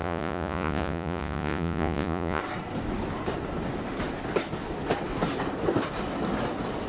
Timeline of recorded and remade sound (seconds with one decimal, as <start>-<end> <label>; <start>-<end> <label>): 0.0-2.4 remade; 2.4-6.9 recorded

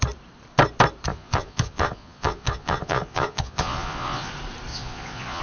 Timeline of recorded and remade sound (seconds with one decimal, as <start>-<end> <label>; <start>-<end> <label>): 0.0-1.1 recorded; 1.1-4.3 remade; 4.3-4.7 recorded; 4.7-5.4 remade